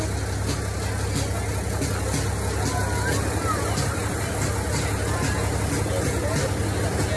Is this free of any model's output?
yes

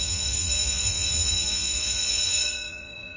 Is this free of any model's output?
no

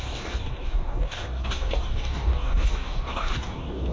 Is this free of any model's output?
no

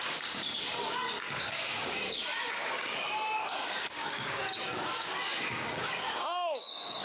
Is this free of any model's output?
no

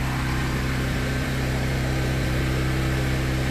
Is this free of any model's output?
no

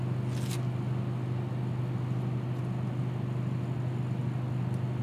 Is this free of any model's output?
yes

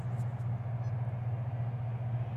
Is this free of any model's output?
yes